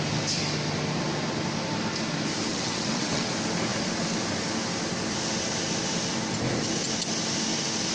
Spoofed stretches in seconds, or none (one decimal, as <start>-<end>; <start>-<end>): 2.5-3.3